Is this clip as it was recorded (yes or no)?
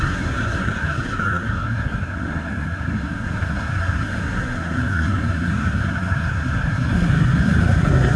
no